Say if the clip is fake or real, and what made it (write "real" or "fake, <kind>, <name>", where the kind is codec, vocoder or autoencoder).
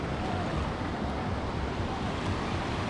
real